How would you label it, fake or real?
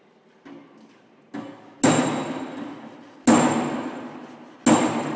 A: real